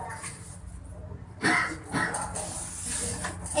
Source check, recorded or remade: recorded